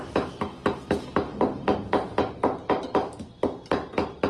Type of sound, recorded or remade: recorded